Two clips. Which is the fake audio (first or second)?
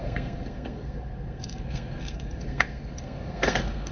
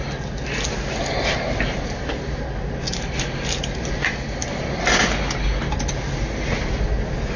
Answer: first